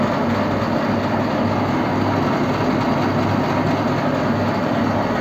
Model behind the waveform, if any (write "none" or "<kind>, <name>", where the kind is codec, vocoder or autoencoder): none